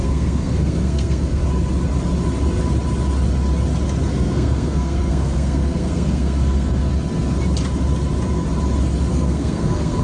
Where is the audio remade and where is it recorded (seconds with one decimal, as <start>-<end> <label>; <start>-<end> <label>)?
0.0-1.4 remade; 1.4-4.1 recorded; 4.1-6.9 remade; 6.9-9.1 recorded; 9.1-10.0 remade